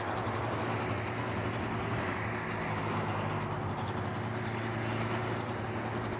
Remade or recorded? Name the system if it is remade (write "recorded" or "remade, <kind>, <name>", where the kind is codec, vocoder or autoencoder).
recorded